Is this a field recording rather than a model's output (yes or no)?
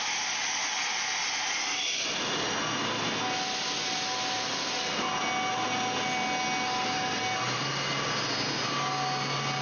yes